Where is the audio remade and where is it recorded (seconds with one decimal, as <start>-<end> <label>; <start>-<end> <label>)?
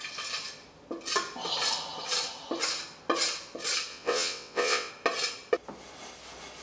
0.0-3.9 recorded; 3.9-4.9 remade; 4.9-6.6 recorded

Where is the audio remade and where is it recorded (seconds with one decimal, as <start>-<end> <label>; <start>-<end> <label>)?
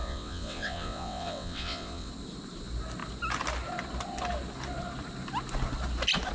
0.0-2.1 remade; 2.1-6.3 recorded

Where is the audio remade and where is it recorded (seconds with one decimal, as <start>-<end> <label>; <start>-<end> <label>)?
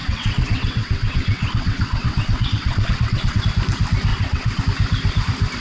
0.0-3.4 remade; 3.4-4.1 recorded; 4.1-4.6 remade; 4.6-5.6 recorded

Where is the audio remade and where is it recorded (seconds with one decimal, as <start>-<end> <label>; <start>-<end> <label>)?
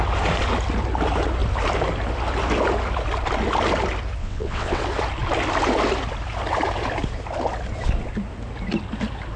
0.0-4.2 recorded; 4.2-4.8 remade; 4.8-9.4 recorded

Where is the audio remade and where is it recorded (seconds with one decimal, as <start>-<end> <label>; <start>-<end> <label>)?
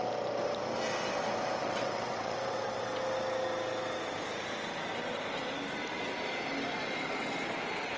0.0-1.6 recorded; 1.6-3.0 remade; 3.0-8.0 recorded